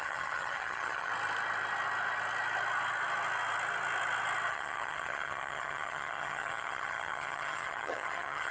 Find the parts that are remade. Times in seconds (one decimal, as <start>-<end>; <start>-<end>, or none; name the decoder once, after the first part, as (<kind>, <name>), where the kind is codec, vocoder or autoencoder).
0.0-1.1 (vocoder, HiFi-GAN); 4.5-8.5